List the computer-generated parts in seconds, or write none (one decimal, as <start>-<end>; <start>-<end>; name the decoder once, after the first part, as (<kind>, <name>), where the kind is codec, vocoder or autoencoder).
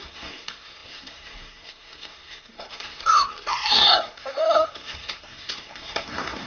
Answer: 0.0-6.5 (codec, SNAC)